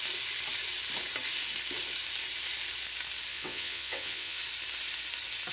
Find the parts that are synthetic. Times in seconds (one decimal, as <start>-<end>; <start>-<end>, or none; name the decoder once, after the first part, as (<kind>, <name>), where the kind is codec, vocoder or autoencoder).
3.3-4.4 (vocoder, WaveNeXt)